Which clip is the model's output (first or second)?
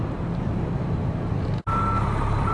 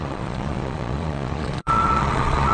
second